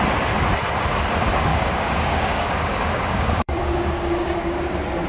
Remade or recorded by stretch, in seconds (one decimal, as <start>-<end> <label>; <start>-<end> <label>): 0.0-1.5 recorded; 1.5-4.6 remade; 4.6-5.1 recorded